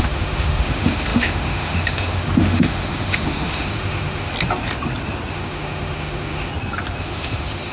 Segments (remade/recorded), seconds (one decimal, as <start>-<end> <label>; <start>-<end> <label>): 0.0-4.3 remade; 4.3-5.3 recorded; 5.3-6.5 remade; 6.5-7.0 recorded; 7.0-7.7 remade

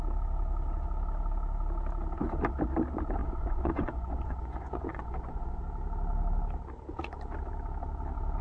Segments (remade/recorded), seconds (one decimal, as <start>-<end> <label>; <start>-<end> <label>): 0.0-3.2 recorded; 3.2-5.6 remade; 5.6-8.4 recorded

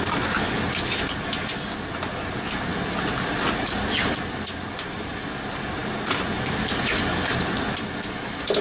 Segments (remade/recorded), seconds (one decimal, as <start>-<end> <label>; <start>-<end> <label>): 0.0-8.6 recorded

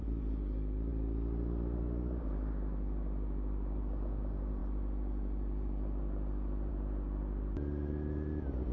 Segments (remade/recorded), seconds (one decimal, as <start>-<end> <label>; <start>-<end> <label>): 0.0-8.7 recorded